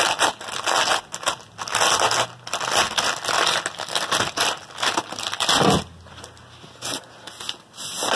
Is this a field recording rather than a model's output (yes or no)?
yes